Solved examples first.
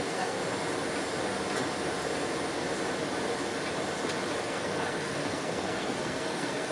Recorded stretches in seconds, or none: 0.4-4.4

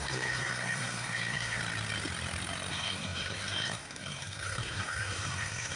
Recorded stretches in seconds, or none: 1.6-2.7

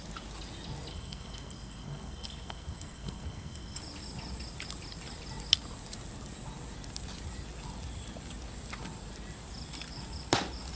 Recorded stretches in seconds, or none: 0.0-0.9; 3.8-10.8

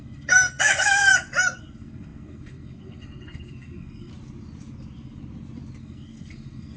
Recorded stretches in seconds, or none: 1.1-1.6; 4.1-5.8

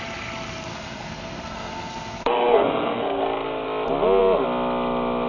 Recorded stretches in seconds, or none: 0.0-0.7; 3.2-5.3

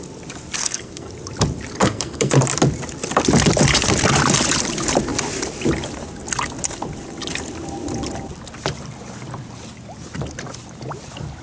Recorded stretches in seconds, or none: 0.0-0.6; 1.1-1.8; 2.4-11.4

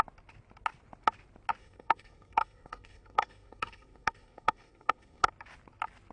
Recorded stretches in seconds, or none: 0.0-1.6; 5.3-6.1